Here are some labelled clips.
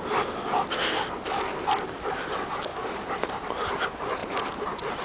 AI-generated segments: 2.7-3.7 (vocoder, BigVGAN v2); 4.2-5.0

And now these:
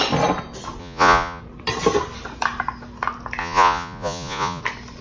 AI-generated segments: 0.8-1.4 (vocoder, Vocos); 3.4-4.6